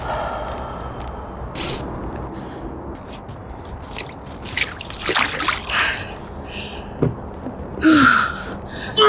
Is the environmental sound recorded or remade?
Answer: recorded